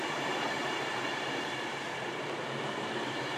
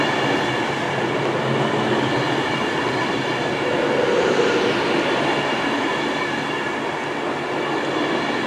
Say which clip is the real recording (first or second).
second